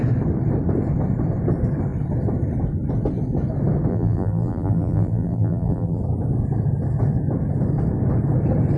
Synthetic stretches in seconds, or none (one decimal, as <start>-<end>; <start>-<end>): 3.9-6.0